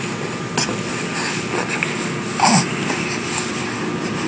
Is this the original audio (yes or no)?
yes